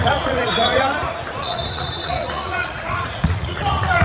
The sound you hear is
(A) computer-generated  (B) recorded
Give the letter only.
A